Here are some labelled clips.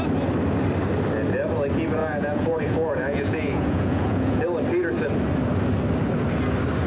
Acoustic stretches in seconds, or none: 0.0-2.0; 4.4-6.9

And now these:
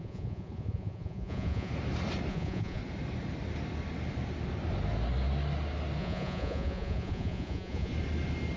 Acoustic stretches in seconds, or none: 1.7-2.3; 2.8-6.0; 7.9-8.6

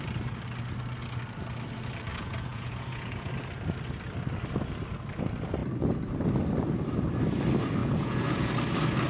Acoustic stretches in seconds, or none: 0.0-2.1; 3.3-7.8; 8.5-9.1

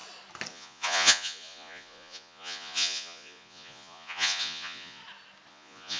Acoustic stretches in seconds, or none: 0.0-0.5; 5.0-5.5

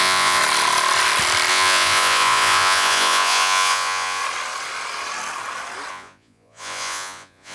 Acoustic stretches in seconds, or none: 0.4-1.5; 4.2-5.9